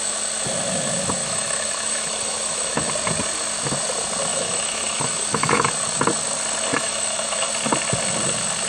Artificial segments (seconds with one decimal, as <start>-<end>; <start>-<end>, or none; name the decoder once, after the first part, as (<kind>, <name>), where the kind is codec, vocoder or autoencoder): 1.2-2.9 (autoencoder, DAC-VAE); 4.3-5.7; 6.7-7.5